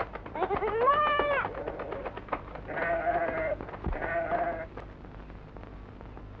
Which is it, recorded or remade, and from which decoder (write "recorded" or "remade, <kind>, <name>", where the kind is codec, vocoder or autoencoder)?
recorded